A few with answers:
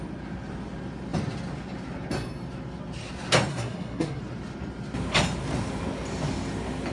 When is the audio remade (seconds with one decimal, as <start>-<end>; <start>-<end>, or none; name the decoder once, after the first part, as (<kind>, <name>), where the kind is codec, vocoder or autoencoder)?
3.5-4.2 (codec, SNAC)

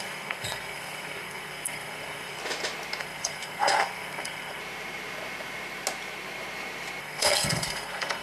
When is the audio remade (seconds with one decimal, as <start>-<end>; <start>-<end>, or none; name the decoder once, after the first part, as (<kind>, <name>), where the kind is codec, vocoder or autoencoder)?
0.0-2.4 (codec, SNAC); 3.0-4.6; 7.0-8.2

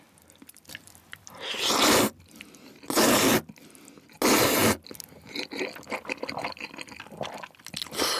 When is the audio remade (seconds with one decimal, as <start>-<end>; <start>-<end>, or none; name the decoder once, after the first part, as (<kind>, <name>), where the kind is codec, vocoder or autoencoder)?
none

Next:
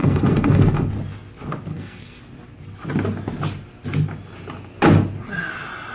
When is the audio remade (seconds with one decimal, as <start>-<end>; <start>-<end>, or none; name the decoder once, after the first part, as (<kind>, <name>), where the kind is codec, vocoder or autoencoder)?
0.0-0.9 (codec, SNAC); 1.7-2.2

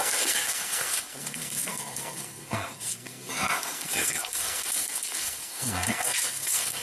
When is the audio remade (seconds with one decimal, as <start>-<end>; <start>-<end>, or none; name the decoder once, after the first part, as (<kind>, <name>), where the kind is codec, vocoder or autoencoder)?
0.0-6.8 (codec, SNAC)

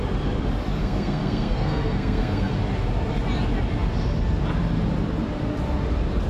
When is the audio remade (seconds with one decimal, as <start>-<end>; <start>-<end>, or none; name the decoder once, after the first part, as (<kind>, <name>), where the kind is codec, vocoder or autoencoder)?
0.8-2.5 (codec, SNAC)